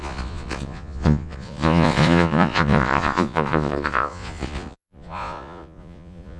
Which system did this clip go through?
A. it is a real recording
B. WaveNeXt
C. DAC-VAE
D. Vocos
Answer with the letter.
D